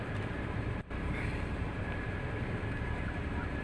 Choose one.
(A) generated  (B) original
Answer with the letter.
A